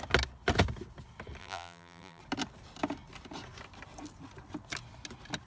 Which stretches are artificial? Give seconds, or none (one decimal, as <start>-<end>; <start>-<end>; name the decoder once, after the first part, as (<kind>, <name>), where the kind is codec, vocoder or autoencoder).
1.4-2.2 (vocoder, BigVGAN v2)